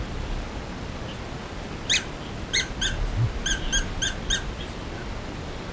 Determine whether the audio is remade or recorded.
recorded